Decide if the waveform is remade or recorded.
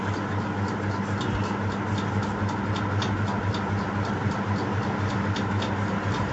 recorded